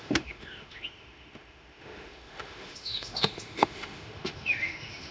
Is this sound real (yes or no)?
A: no